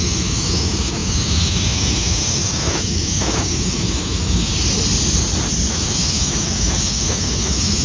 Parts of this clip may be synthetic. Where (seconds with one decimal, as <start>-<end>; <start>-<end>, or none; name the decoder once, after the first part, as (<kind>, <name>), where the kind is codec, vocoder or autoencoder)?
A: 0.0-4.5 (autoencoder, DAC-VAE); 5.7-7.8